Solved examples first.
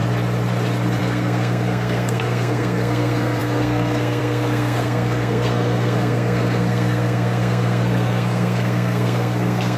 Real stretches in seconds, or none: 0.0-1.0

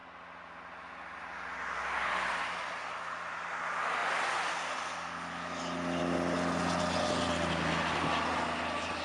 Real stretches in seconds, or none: 0.0-9.0

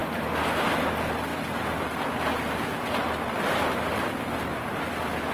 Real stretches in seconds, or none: 0.0-5.3

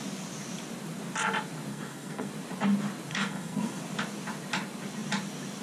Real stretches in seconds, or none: 0.0-1.7; 2.3-3.1; 3.8-5.6

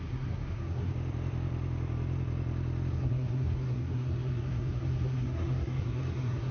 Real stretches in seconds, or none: 0.9-2.9

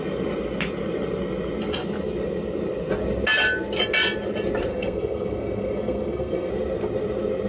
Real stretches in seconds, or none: 0.0-4.7; 6.5-7.5

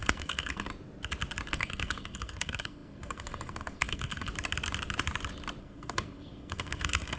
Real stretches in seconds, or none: 0.7-1.5; 4.3-5.6

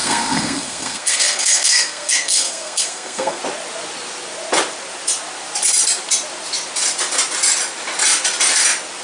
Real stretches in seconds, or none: 3.4-9.0